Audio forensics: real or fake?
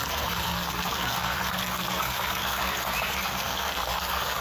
fake